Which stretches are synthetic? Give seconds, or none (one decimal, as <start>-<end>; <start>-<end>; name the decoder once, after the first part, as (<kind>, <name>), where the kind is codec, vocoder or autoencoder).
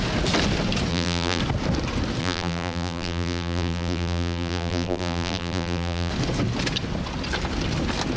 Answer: 0.9-1.4 (vocoder, BigVGAN v2); 2.2-6.1